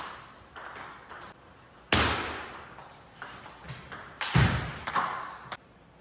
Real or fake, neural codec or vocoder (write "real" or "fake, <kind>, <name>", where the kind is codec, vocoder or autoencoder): real